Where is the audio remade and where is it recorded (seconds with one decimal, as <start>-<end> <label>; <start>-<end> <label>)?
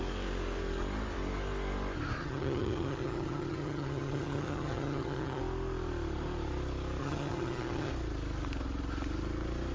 0.0-2.2 recorded; 2.2-5.4 remade; 5.4-7.0 recorded; 7.0-7.9 remade; 7.9-9.7 recorded